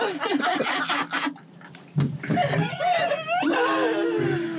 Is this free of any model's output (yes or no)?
yes